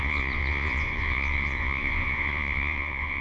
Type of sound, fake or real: fake